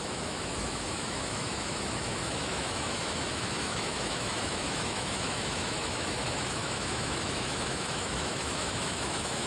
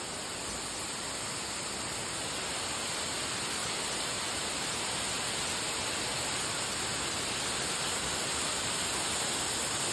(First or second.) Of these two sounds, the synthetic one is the first